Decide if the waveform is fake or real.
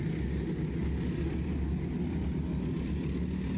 real